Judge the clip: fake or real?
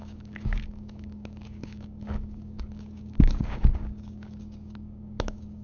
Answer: fake